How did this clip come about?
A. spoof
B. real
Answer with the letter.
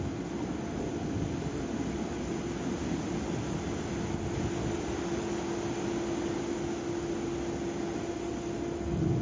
B